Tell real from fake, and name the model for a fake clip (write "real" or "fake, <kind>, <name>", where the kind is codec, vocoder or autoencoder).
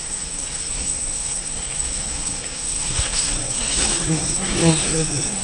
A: fake, codec, SNAC